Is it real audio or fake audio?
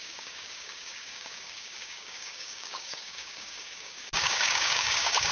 fake